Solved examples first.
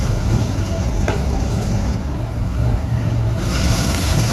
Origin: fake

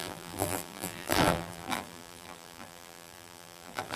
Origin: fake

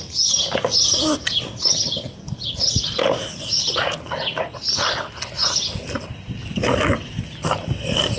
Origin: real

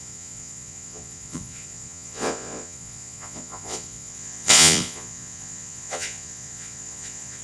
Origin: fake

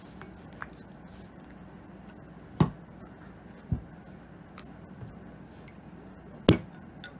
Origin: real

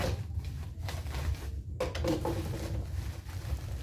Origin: real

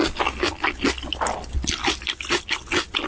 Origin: real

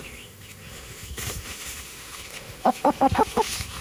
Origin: fake